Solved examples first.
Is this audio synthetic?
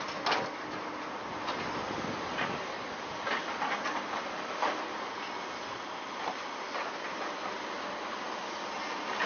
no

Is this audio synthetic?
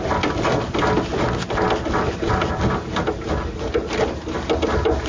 no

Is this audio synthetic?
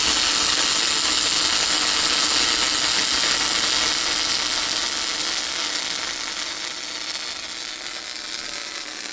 no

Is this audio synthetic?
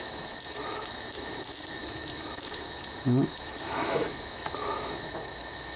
yes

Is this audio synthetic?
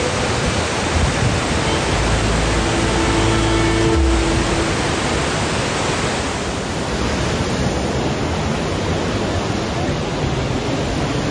no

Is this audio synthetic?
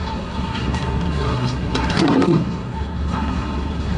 yes